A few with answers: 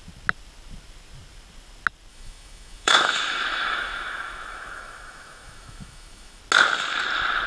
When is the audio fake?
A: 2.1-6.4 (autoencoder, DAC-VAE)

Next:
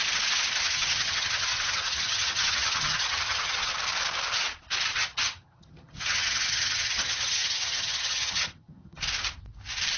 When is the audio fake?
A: 0.6-3.7 (vocoder, HiFi-GAN); 4.9-9.0